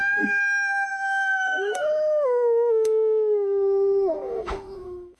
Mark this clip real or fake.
fake